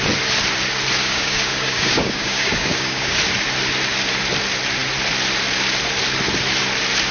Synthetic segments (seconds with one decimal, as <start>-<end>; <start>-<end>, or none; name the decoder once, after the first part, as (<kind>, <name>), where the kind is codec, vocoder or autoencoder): 1.0-3.2 (codec, DAC)